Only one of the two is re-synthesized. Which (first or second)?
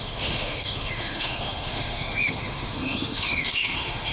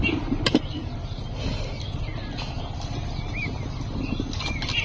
first